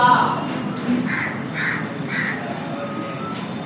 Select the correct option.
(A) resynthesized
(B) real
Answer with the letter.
B